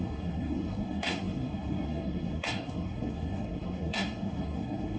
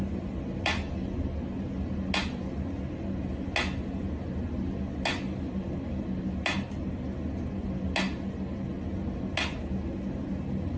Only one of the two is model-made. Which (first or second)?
first